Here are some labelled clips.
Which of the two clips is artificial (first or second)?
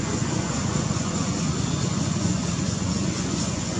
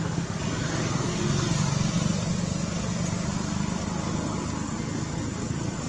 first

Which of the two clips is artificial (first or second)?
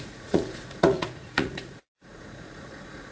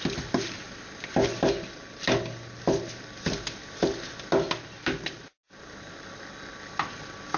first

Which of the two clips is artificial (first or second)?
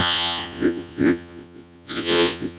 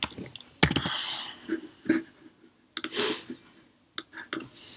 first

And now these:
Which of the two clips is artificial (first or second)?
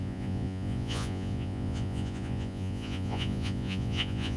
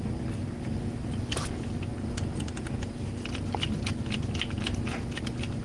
first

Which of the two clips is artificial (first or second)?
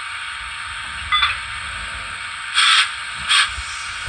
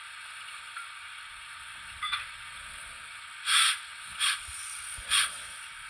second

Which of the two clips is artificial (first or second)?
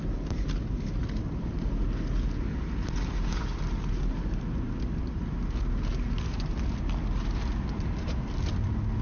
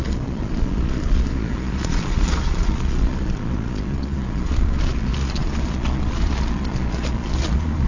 second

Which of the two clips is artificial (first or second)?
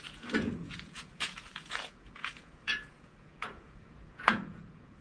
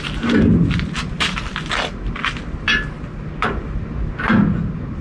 first